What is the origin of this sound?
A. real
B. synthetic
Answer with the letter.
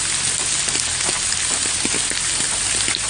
A